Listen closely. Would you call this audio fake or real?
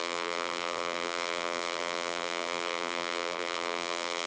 fake